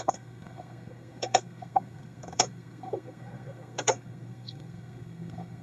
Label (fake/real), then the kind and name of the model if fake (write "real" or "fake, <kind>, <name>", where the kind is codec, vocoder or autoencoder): fake, codec, SNAC